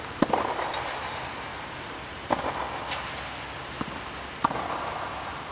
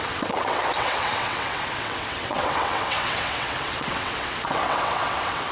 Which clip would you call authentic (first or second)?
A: first